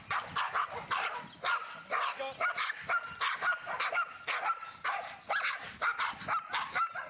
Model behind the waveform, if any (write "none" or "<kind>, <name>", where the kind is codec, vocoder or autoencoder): none